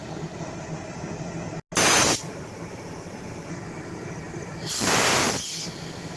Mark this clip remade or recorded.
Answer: recorded